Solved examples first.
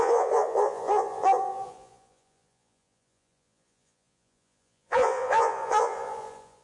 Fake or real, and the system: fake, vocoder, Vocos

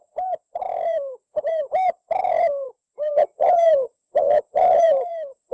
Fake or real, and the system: fake, vocoder, Vocos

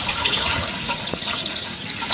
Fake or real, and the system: fake, vocoder, Vocos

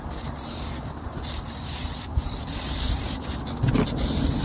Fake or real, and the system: real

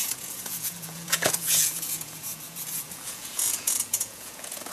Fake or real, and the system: fake, vocoder, Vocos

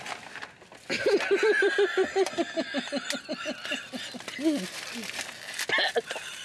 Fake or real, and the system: real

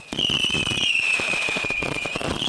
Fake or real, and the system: fake, vocoder, Vocos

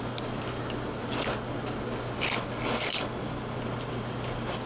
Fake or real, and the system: real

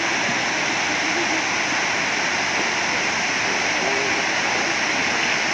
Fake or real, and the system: real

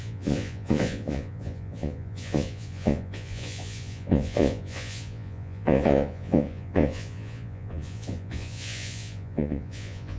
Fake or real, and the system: fake, vocoder, Vocos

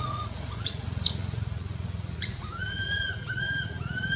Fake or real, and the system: fake, vocoder, Vocos